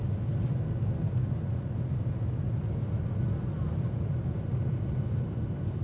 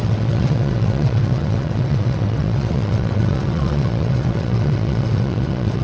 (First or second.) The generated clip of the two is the second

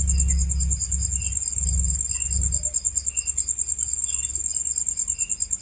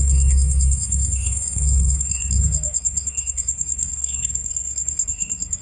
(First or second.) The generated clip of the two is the second